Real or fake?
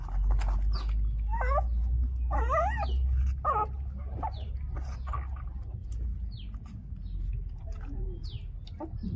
real